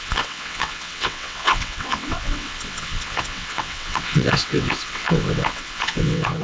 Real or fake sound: fake